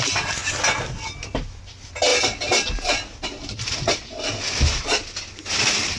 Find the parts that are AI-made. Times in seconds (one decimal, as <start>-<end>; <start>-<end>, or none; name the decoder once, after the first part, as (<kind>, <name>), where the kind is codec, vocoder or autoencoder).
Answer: none